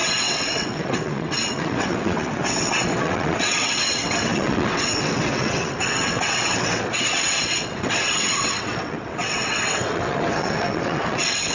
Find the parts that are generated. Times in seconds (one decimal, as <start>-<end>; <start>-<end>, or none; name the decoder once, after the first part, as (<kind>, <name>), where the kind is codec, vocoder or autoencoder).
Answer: 0.0-11.5 (vocoder, WaveNeXt)